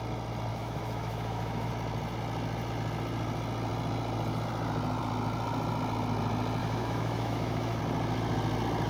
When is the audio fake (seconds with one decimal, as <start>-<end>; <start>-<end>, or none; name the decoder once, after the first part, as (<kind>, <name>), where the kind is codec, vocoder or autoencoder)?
0.5-1.7 (autoencoder, DAC-VAE); 6.6-7.8